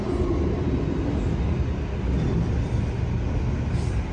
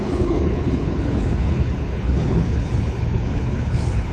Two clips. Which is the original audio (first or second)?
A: first